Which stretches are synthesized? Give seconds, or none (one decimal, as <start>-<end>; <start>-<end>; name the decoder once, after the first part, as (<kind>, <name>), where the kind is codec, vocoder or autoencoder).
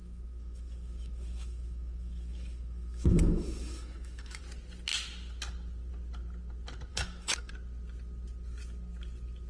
0.0-4.4 (autoencoder, DAC-VAE); 6.9-7.5